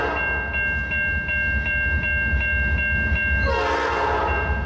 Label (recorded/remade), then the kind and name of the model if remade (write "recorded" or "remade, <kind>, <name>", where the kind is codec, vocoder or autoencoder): recorded